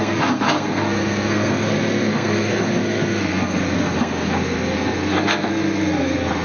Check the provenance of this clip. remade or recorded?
remade